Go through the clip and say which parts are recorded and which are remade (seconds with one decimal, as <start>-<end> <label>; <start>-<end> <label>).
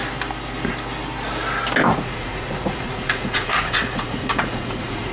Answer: 0.0-1.9 recorded; 1.9-5.1 remade